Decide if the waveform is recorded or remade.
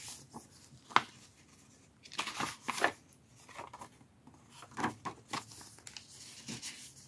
recorded